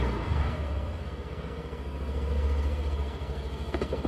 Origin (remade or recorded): remade